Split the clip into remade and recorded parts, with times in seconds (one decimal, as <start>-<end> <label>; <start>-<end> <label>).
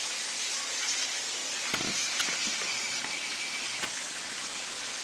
0.0-5.0 recorded